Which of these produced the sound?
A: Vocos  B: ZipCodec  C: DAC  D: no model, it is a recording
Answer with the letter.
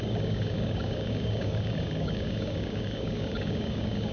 C